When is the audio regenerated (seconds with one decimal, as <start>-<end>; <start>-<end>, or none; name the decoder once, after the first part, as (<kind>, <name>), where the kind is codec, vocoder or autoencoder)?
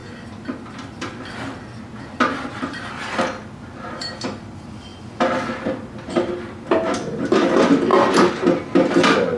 none